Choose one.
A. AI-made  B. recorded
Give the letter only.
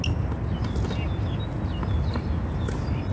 B